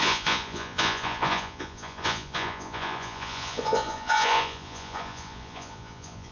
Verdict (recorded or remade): remade